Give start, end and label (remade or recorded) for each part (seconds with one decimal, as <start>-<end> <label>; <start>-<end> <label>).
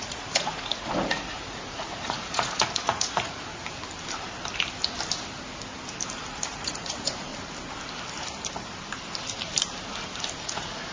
0.0-3.5 remade; 3.5-6.5 recorded; 6.5-7.3 remade; 7.3-10.4 recorded; 10.4-10.9 remade